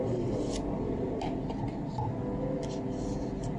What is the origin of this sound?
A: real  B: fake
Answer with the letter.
A